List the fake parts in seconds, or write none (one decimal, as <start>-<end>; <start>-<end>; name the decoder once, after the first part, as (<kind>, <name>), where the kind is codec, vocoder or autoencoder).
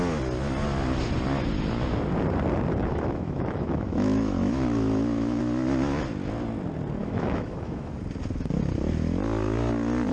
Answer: 2.9-5.4 (autoencoder, DAC-VAE); 7.0-8.0